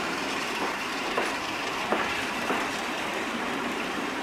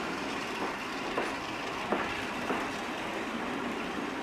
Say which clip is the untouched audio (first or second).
second